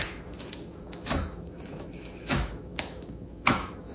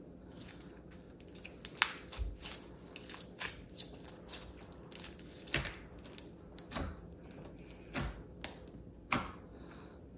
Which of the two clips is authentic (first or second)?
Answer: second